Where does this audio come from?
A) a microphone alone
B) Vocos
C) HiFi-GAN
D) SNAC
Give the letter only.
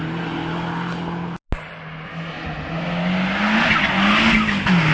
A